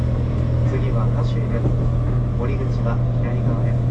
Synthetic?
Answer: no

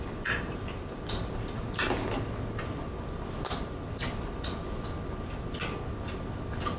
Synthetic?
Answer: no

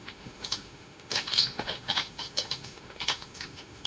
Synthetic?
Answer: yes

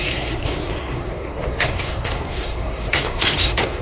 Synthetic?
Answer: yes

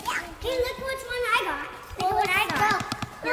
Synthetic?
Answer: no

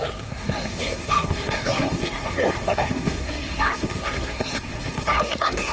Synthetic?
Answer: yes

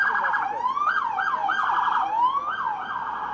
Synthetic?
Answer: no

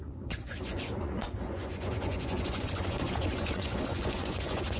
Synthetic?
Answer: yes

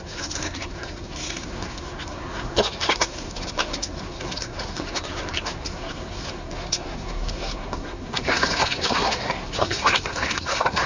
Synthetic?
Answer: yes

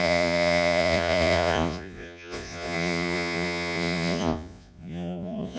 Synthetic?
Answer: yes